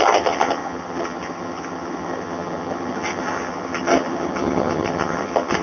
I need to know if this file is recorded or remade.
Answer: remade